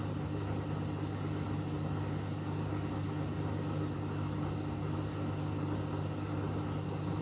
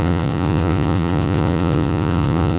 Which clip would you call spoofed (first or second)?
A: second